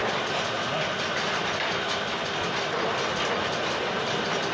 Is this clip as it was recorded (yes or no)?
yes